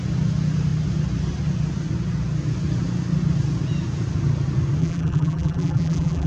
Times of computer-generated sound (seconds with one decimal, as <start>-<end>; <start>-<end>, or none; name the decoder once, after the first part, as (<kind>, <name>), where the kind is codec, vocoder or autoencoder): 4.8-6.3 (vocoder, BigVGAN v2)

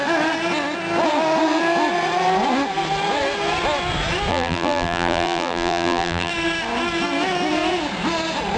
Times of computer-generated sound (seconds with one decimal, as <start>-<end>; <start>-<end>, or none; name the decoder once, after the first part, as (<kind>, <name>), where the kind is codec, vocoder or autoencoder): 4.3-6.3 (vocoder, BigVGAN v2)

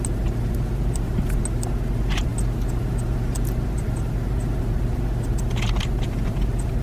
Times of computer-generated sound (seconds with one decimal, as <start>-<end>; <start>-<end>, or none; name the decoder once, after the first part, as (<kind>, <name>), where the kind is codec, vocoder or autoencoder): none

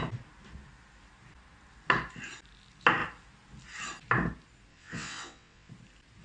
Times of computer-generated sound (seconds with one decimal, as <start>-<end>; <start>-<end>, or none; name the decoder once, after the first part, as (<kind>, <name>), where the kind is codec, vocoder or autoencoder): 4.7-5.7 (vocoder, WaveNeXt)

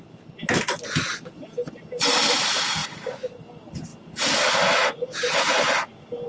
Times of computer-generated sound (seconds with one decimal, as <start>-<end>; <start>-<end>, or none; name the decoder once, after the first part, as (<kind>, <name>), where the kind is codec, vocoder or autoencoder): 2.8-3.4 (vocoder, Vocos)